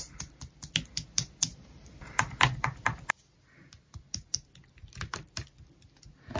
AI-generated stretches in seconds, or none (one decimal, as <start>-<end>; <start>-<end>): 1.5-2.3